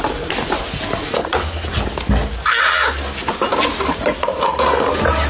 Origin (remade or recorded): recorded